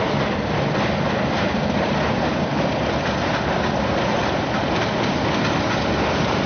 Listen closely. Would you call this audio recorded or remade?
recorded